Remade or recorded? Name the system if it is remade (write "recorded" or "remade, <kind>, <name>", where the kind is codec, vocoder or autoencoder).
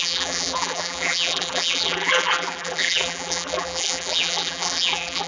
remade, vocoder, BigVGAN v2